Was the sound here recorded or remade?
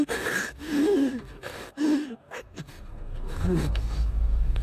remade